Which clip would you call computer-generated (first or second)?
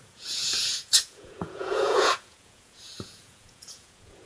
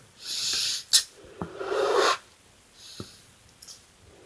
first